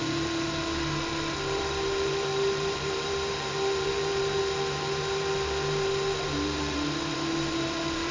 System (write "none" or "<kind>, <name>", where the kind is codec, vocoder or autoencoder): vocoder, BigVGAN v2